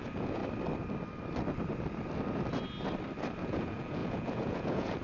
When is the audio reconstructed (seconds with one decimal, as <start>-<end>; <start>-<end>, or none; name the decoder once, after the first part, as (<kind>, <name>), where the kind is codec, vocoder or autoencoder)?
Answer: 0.0-0.4 (vocoder, Vocos); 3.4-5.0